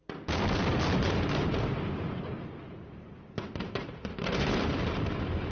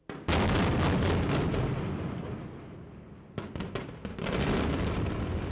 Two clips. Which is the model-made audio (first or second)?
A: first